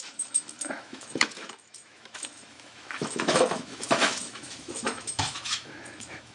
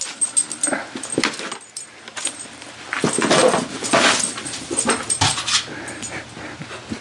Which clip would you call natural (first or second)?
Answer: second